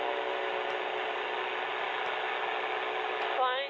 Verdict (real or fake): real